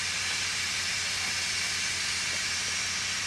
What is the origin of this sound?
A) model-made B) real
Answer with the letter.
B